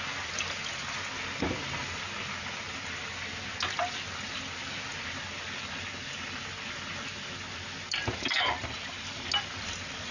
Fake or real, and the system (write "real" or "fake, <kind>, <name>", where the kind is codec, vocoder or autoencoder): real